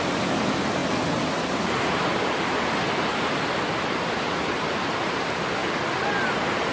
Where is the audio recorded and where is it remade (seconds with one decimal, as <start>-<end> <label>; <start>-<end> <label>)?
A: 0.0-6.7 recorded